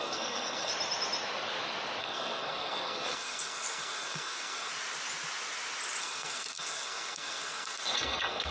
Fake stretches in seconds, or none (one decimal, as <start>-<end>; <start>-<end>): 0.0-0.7; 2.0-4.7; 6.0-8.5

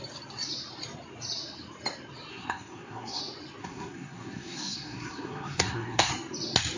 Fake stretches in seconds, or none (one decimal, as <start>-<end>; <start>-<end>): 2.3-3.2; 3.6-6.1

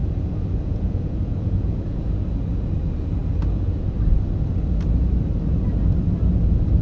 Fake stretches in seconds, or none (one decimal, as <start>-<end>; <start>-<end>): 0.0-2.1

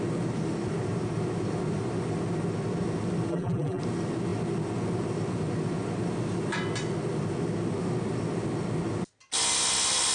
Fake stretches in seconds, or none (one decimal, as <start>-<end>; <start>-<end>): 3.3-3.8

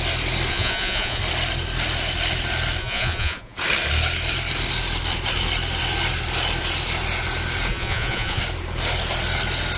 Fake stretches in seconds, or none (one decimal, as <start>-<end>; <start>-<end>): 0.5-1.2; 2.8-3.6; 7.7-8.4

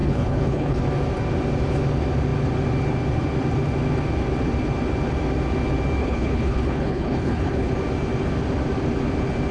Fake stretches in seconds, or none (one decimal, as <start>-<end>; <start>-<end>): 0.0-0.8; 6.0-7.7

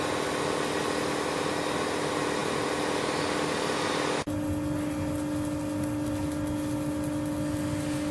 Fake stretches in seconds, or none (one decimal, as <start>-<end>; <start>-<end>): none